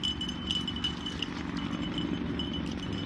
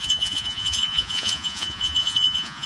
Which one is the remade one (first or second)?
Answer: second